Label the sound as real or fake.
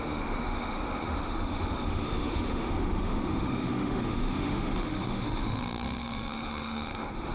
fake